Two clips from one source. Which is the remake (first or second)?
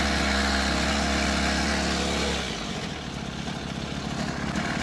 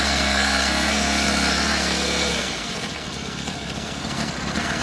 second